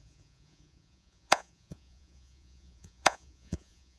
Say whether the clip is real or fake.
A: fake